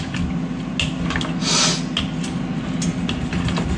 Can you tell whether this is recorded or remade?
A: recorded